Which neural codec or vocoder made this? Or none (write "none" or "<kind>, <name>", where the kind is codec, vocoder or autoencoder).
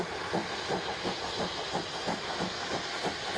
none